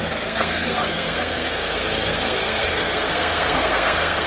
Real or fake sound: fake